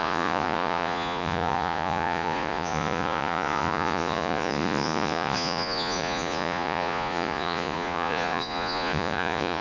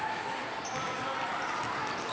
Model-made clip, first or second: first